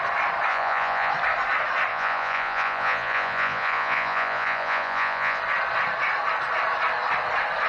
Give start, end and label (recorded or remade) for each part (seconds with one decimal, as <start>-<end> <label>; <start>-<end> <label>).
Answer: 0.0-0.5 recorded; 0.5-1.1 remade; 1.1-1.9 recorded; 1.9-5.4 remade; 5.4-7.7 recorded